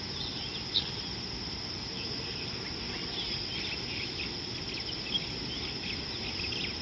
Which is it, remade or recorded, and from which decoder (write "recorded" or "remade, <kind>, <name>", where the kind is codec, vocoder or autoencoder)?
recorded